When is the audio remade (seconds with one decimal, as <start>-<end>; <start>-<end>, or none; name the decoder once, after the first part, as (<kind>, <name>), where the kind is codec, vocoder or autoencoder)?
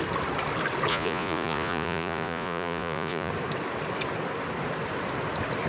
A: 0.9-3.3 (vocoder, Vocos)